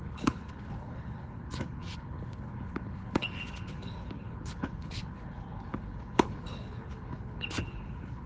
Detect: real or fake fake